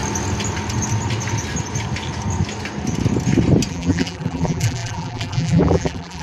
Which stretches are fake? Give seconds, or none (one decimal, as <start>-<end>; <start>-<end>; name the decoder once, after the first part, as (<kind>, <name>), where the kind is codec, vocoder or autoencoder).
3.7-6.2 (vocoder, BigVGAN v2)